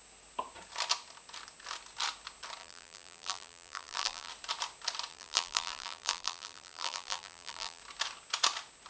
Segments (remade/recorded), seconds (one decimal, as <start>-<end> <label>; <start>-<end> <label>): 0.0-2.6 recorded; 2.6-4.3 remade; 4.3-5.1 recorded; 5.1-7.8 remade; 7.8-8.9 recorded